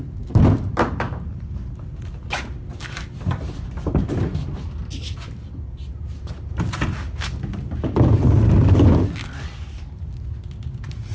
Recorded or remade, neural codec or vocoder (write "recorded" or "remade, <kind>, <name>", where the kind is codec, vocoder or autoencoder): recorded